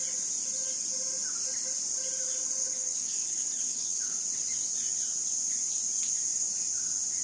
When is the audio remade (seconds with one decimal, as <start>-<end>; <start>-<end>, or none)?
2.6-4.2